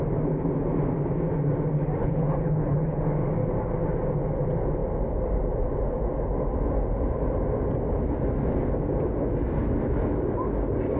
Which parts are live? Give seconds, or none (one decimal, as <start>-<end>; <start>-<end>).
0.0-2.0; 3.0-11.0